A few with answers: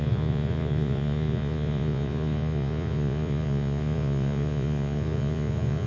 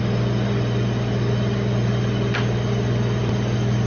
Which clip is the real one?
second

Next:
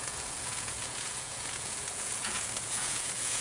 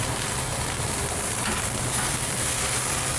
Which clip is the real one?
second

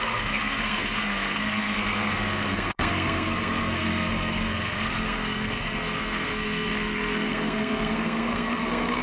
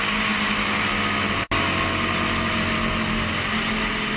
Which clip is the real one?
second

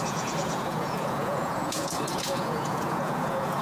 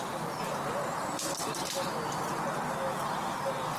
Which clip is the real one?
second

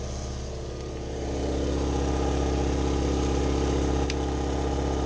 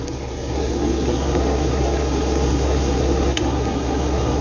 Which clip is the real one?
first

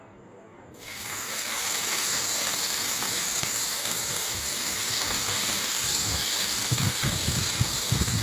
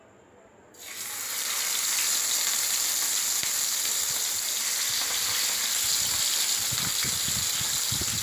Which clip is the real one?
second